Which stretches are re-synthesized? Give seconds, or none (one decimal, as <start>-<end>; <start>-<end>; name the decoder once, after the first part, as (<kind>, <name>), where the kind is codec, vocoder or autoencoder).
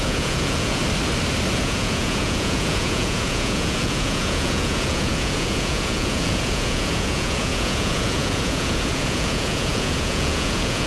0.0-0.8 (vocoder, Vocos); 1.5-10.9